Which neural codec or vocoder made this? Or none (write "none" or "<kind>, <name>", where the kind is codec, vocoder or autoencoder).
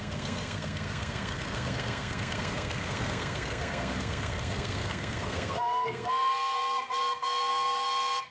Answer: codec, SNAC